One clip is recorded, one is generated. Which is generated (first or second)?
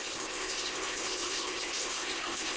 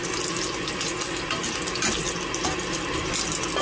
first